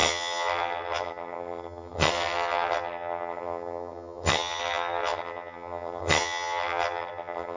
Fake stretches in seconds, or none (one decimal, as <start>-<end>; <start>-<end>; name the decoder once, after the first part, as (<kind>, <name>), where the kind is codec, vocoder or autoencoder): 0.0-7.6 (vocoder, HiFi-GAN)